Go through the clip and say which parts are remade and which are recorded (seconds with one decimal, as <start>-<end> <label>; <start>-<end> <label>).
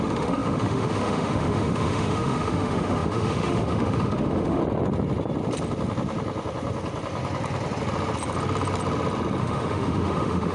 0.0-4.6 remade; 4.6-9.4 recorded; 9.4-10.5 remade